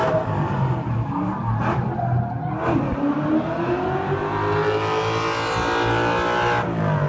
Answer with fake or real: real